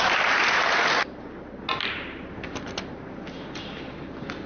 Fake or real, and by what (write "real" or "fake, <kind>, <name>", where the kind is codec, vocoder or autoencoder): real